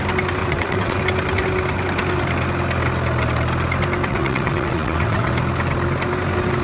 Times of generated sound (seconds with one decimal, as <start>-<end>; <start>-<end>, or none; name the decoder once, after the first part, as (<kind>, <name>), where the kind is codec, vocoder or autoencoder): 0.4-1.0 (vocoder, WaveNeXt); 4.1-5.3

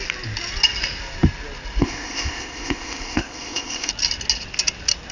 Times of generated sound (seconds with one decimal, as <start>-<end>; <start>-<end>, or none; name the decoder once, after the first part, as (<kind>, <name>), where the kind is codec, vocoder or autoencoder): 1.8-3.9 (codec, ZipCodec)

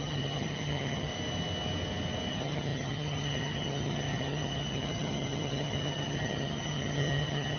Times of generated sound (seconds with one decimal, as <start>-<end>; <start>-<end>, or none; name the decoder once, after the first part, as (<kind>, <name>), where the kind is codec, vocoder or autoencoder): 0.0-1.1 (vocoder, HiFi-GAN); 2.3-7.6

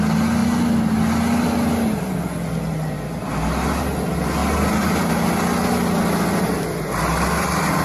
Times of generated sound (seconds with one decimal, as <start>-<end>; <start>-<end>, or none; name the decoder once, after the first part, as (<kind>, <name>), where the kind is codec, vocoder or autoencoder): none